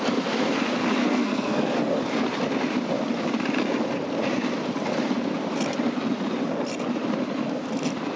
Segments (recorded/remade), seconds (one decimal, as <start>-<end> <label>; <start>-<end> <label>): 0.0-1.0 recorded; 1.0-1.8 remade; 1.8-8.2 recorded